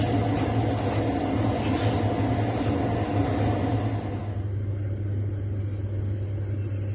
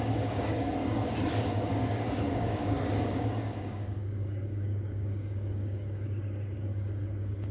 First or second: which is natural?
first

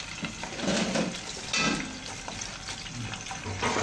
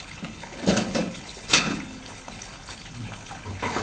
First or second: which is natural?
first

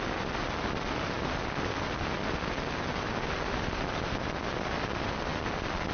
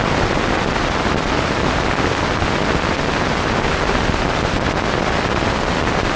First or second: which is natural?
first